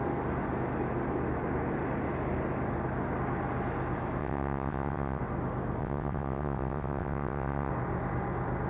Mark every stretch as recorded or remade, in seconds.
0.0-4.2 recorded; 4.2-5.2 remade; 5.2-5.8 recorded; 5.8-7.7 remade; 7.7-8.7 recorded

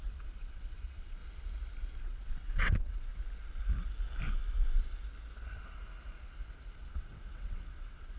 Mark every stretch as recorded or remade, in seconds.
0.0-1.2 remade; 1.2-2.0 recorded; 2.0-3.1 remade; 3.1-6.9 recorded; 6.9-8.2 remade